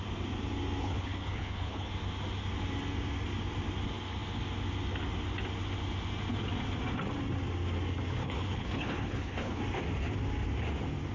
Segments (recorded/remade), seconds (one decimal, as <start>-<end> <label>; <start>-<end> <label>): 0.0-0.8 recorded; 0.8-1.9 remade; 1.9-8.2 recorded; 8.2-9.6 remade; 9.6-11.1 recorded